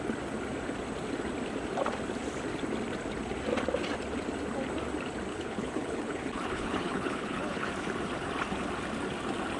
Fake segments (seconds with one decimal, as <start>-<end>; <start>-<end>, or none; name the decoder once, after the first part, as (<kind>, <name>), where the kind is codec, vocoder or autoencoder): 5.3-7.7 (codec, HILCodec)